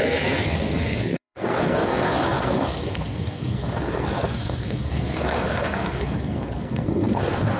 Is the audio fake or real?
fake